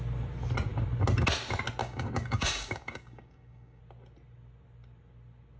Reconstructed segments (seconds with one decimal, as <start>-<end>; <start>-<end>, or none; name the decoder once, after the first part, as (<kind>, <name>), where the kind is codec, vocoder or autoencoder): 1.8-3.8 (codec, DAC)

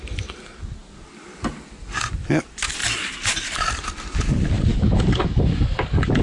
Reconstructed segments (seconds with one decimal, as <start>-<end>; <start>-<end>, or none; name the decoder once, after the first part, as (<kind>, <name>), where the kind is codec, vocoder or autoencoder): 4.7-6.2 (codec, DAC)

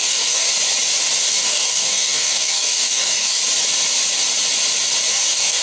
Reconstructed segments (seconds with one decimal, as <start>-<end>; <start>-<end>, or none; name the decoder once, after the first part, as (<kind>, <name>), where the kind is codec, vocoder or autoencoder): 0.0-0.5 (codec, DAC); 1.3-3.4; 5.1-5.6

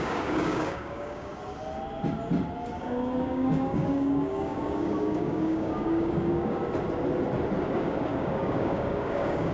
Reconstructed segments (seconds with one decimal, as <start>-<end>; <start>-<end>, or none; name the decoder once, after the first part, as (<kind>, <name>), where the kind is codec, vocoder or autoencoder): 0.0-1.3 (codec, DAC); 2.8-6.6; 7.7-9.5

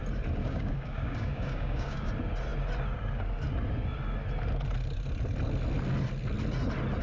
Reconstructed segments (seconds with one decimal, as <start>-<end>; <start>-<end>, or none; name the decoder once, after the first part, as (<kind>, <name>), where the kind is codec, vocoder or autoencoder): 0.4-2.1 (codec, DAC)

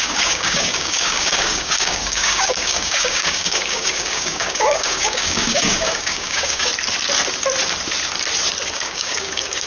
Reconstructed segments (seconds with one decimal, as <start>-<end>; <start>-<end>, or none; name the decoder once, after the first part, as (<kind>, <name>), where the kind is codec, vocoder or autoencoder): 0.0-6.7 (codec, DAC); 8.7-9.7

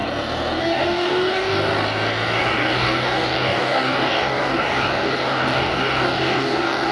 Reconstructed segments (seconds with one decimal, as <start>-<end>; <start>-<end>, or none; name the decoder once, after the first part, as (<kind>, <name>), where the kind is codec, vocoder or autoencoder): 0.6-1.7 (codec, DAC); 2.4-6.9

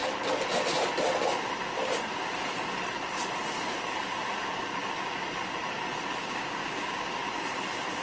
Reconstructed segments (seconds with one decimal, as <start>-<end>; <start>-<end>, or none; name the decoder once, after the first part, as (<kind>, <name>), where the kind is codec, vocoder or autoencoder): 6.2-7.2 (codec, DAC)